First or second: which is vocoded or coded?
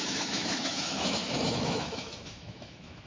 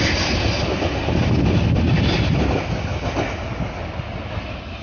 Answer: first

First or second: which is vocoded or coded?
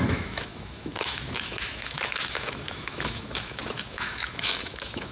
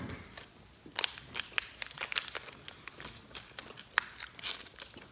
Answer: first